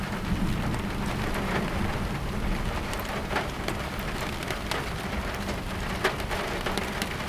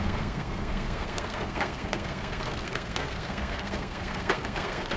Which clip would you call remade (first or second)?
second